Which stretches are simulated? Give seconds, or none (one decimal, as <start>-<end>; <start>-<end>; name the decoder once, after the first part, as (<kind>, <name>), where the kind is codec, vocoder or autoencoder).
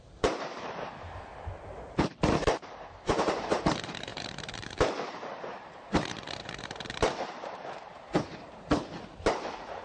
0.0-1.3 (vocoder, BigVGAN v2); 1.9-9.8